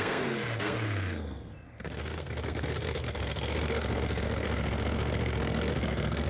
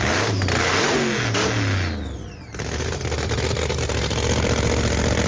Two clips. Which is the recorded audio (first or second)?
second